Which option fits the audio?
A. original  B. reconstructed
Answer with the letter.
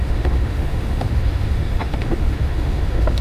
B